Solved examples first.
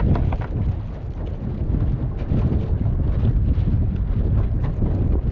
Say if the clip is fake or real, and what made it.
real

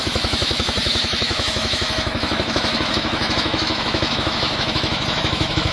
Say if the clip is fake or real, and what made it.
fake, autoencoder, DAC-VAE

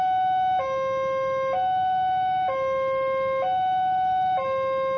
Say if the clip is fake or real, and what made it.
real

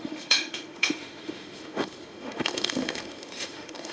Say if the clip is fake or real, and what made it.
fake, autoencoder, DAC-VAE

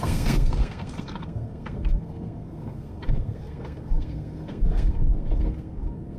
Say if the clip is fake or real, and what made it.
fake, codec, SNAC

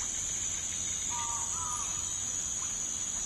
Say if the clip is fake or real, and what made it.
real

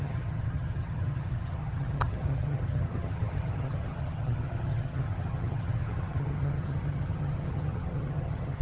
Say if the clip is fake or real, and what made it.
fake, vocoder, HiFi-GAN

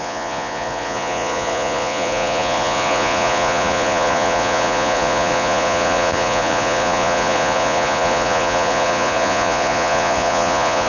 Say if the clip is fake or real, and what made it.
fake, vocoder, Vocos